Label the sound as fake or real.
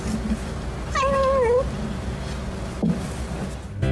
real